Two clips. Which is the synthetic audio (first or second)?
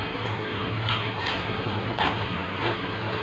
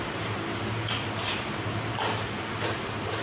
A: first